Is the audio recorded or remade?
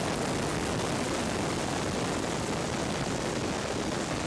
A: recorded